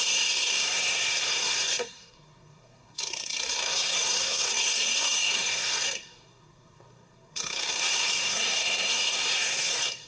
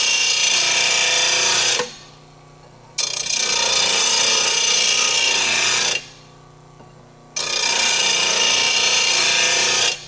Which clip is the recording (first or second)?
second